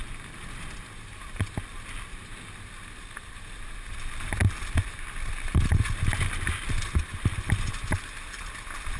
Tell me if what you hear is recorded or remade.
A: recorded